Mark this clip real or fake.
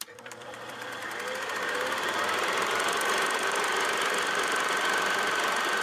fake